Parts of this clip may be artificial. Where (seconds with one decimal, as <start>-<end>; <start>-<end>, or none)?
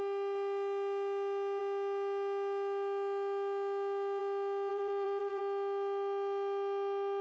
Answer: 4.7-5.4